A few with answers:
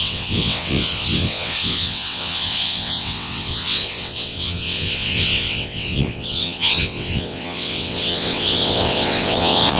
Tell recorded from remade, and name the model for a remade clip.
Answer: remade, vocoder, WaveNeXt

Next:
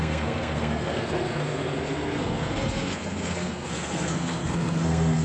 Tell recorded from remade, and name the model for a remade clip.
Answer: remade, codec, SNAC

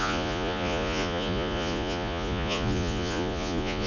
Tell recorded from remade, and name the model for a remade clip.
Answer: remade, vocoder, Vocos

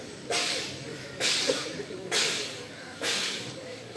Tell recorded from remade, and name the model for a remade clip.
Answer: remade, codec, DAC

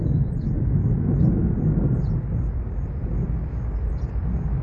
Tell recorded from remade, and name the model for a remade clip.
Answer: recorded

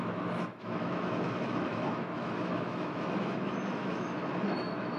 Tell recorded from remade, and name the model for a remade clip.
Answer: remade, autoencoder, DAC-VAE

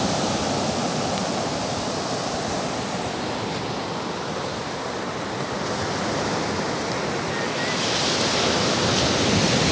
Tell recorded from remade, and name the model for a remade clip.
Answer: recorded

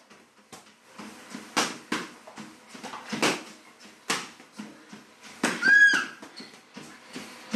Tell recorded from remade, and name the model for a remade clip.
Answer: recorded